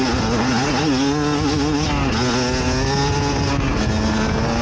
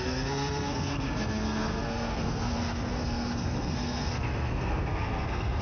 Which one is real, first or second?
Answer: first